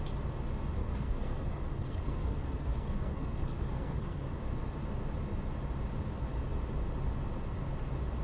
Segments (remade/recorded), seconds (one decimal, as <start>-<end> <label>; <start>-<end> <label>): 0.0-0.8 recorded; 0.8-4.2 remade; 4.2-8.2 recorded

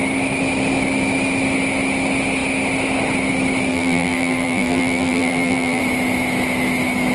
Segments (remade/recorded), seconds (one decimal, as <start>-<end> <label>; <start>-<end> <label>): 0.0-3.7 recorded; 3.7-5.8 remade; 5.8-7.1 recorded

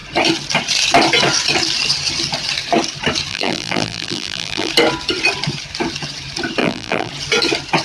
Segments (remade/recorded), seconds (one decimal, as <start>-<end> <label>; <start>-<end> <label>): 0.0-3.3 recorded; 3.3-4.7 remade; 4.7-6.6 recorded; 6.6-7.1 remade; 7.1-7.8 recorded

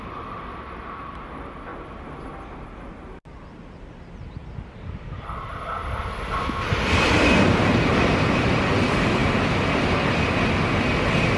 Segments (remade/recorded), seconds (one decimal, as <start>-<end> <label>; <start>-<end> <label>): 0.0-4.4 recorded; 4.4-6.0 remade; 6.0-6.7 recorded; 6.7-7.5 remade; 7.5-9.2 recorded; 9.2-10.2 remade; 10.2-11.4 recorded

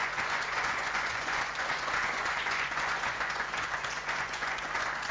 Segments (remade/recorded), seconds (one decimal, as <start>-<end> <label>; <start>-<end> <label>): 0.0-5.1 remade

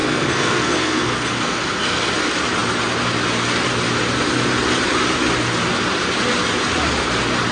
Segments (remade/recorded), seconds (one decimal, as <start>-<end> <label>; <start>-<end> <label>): 0.0-2.1 remade; 2.1-7.5 recorded

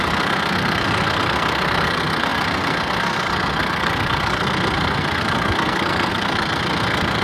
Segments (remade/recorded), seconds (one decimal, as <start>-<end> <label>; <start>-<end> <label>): 0.0-7.2 remade

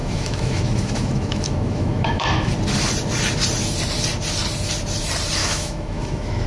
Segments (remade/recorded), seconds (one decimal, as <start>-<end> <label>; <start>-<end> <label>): 0.0-2.5 remade; 2.5-5.4 recorded; 5.4-6.5 remade